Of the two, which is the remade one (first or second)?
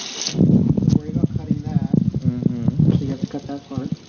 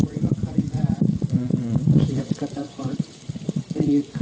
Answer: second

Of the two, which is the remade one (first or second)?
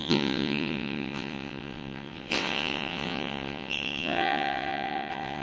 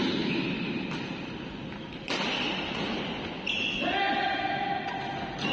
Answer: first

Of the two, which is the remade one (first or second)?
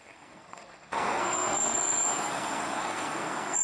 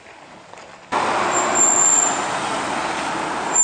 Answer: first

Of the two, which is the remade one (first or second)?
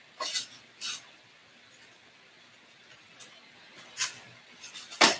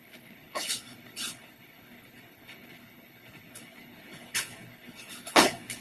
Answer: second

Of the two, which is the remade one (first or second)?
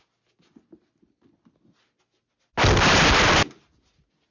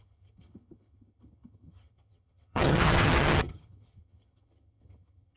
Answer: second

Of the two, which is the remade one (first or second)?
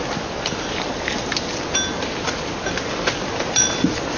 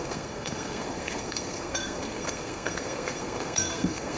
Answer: second